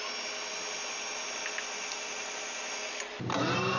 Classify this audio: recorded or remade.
recorded